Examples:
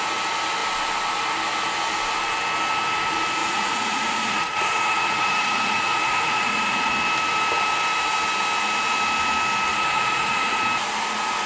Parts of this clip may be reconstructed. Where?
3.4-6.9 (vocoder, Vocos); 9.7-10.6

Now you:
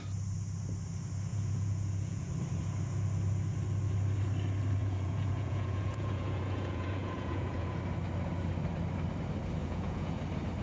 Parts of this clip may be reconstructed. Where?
1.3-2.3 (vocoder, Vocos); 4.8-7.8; 9.6-10.2

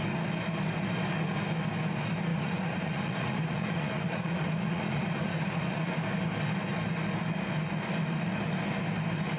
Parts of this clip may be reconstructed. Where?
2.3-5.9 (vocoder, Vocos)

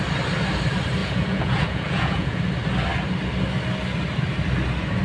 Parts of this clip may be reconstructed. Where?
1.0-2.4 (vocoder, Vocos)